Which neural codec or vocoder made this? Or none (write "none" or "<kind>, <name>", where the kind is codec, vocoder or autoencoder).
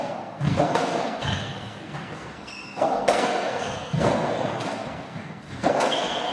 codec, SNAC